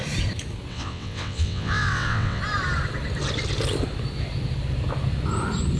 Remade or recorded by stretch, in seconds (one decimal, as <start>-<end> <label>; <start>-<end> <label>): 0.0-0.7 recorded; 0.7-2.4 remade; 2.4-5.8 recorded